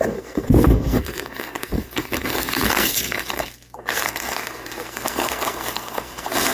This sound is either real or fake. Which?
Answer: fake